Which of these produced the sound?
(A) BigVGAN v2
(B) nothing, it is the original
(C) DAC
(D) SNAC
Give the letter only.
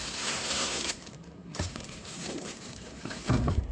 D